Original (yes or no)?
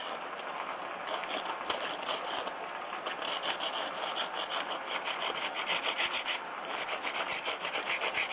yes